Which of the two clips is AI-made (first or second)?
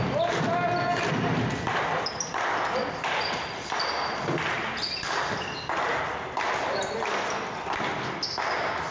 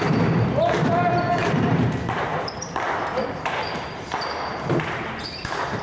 second